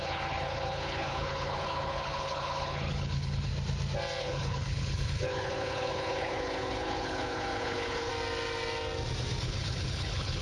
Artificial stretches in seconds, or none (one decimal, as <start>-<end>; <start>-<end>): 0.0-3.5; 4.2-8.1; 9.4-10.4